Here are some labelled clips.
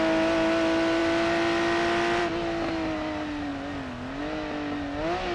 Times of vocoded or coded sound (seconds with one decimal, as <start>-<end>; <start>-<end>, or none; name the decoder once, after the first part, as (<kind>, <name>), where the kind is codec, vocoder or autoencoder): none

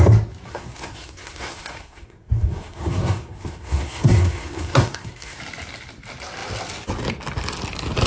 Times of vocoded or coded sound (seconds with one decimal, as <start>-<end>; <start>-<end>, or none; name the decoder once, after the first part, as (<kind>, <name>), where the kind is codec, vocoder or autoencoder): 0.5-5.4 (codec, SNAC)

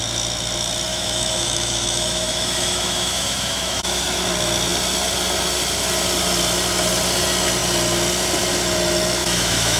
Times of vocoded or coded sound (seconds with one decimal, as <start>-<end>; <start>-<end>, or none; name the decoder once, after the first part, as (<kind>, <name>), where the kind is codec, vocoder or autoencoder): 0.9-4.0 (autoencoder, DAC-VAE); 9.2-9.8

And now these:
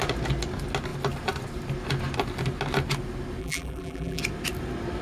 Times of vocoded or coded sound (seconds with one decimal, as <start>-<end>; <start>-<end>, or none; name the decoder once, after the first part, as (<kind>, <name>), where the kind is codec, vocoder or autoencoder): 3.4-4.2 (vocoder, BigVGAN v2)